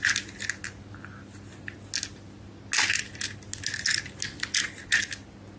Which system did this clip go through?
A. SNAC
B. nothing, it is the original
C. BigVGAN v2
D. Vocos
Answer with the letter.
B